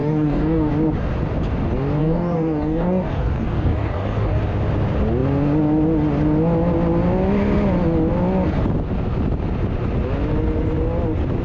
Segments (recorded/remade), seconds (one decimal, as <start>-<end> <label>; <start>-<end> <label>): 0.0-0.7 remade; 0.7-2.0 recorded; 2.0-4.4 remade; 4.4-11.4 recorded